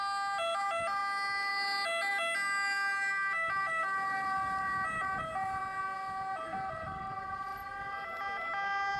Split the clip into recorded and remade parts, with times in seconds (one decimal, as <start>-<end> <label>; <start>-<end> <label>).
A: 0.0-9.0 recorded